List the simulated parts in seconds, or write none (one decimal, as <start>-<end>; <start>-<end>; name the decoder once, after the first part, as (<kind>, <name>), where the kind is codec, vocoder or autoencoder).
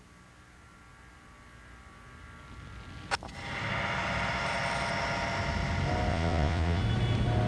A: 6.1-6.8 (vocoder, Vocos)